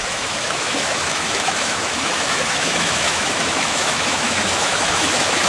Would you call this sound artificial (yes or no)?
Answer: yes